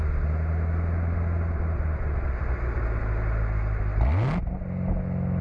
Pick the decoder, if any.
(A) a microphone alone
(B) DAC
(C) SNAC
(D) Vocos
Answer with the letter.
A